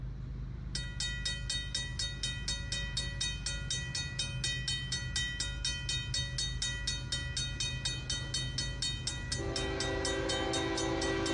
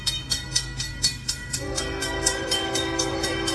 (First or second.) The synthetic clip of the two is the second